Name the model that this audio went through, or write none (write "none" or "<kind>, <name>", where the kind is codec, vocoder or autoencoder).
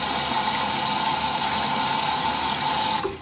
none